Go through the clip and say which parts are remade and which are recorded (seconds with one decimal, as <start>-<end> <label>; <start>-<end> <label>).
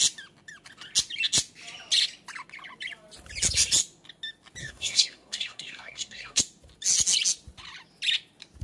0.0-4.6 recorded; 4.6-6.4 remade; 6.4-8.6 recorded